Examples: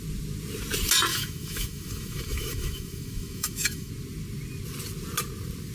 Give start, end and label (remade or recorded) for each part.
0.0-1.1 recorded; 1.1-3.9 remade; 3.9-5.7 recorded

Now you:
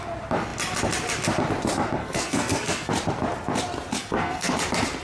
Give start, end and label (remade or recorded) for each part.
0.0-2.0 recorded; 2.0-2.9 remade; 2.9-4.0 recorded; 4.0-4.5 remade; 4.5-5.0 recorded

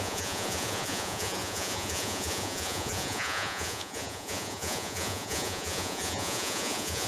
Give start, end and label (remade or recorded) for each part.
0.0-7.1 remade

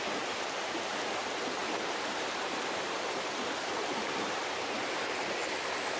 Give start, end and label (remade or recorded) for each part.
0.0-1.6 recorded; 1.6-5.0 remade; 5.0-6.0 recorded

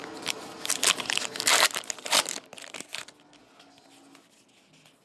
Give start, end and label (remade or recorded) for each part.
0.0-5.0 recorded

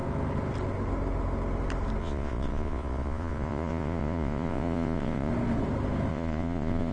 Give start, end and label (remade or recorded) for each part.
0.0-2.0 recorded; 2.0-5.3 remade; 5.3-6.1 recorded; 6.1-6.9 remade

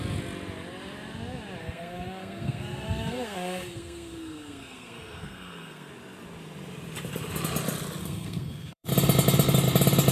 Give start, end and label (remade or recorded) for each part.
0.0-1.6 recorded; 1.6-5.9 remade; 5.9-8.0 recorded; 8.0-8.9 remade; 8.9-10.1 recorded